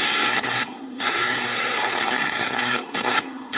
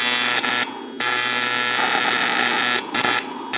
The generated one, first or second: first